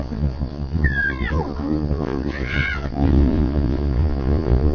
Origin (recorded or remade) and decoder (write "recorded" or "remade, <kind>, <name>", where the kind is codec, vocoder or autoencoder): remade, vocoder, Vocos